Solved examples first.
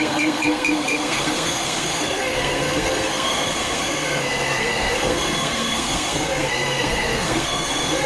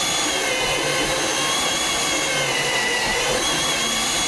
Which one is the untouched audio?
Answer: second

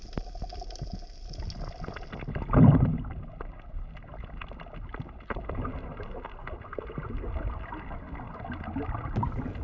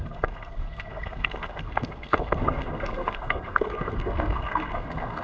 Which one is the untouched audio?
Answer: first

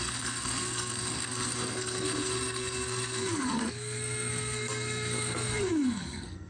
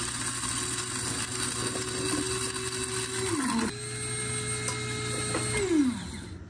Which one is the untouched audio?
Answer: second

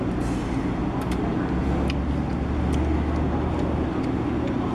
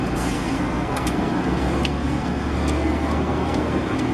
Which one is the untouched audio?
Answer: first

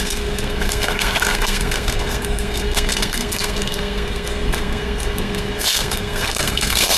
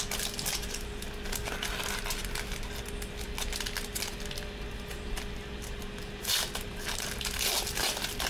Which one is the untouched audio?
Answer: second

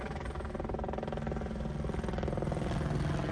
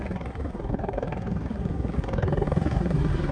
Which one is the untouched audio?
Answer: first